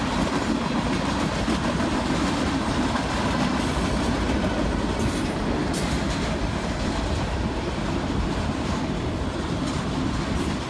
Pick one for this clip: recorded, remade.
recorded